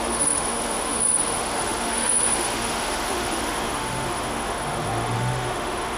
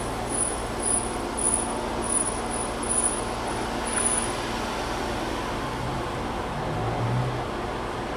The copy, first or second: first